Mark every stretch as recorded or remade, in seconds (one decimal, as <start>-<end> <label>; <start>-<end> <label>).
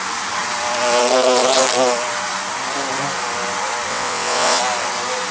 0.0-3.9 recorded; 3.9-4.6 remade; 4.6-5.3 recorded